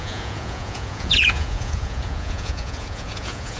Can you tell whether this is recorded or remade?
remade